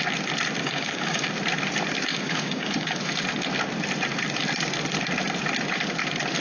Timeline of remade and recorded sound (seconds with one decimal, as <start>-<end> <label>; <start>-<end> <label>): 0.0-0.6 recorded; 0.6-1.3 remade; 1.3-2.1 recorded; 2.1-3.1 remade; 3.1-6.4 recorded

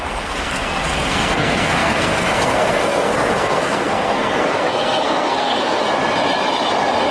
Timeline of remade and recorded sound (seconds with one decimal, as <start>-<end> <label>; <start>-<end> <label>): 0.0-5.8 remade; 5.8-7.1 recorded

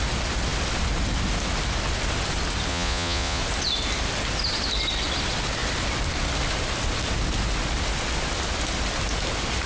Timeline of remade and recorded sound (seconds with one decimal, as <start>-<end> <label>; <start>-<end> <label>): 0.0-2.7 recorded; 2.7-3.4 remade; 3.4-9.7 recorded

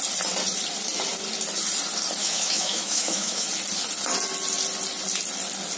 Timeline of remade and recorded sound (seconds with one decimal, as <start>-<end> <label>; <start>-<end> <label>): 0.0-2.2 recorded; 2.2-3.5 remade; 3.5-5.8 recorded

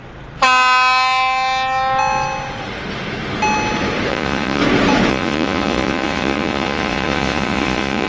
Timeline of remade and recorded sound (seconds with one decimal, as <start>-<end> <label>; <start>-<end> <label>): 0.0-4.1 recorded; 4.1-4.6 remade; 4.6-5.1 recorded; 5.1-8.1 remade